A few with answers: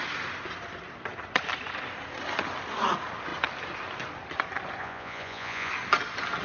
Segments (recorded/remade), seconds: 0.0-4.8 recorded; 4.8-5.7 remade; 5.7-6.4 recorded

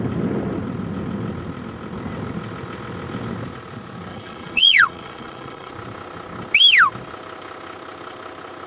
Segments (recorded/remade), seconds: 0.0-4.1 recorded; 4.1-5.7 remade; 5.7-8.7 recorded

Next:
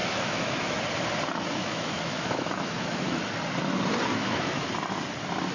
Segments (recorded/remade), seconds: 0.0-0.8 remade; 0.8-1.6 recorded; 1.6-3.2 remade; 3.2-4.1 recorded; 4.1-4.7 remade; 4.7-5.5 recorded

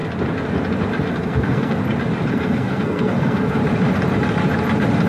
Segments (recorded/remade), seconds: 0.0-1.1 recorded; 1.1-1.8 remade; 1.8-2.3 recorded; 2.3-3.6 remade; 3.6-5.1 recorded

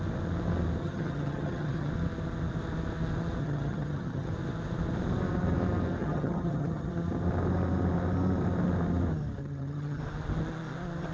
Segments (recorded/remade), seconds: 0.0-0.8 recorded; 0.8-1.9 remade; 1.9-3.4 recorded; 3.4-4.3 remade; 4.3-6.0 recorded; 6.0-6.9 remade; 6.9-9.4 recorded; 9.4-10.0 remade; 10.0-11.1 recorded

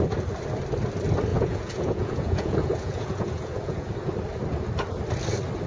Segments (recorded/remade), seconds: 0.0-1.3 recorded; 1.3-3.9 remade; 3.9-5.7 recorded

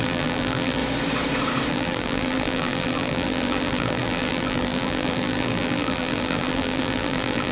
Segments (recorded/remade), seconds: 0.0-0.8 remade; 0.8-1.7 recorded; 1.7-7.5 remade

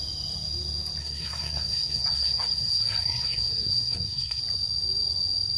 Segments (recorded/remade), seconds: 0.0-1.0 recorded; 1.0-4.4 remade; 4.4-5.6 recorded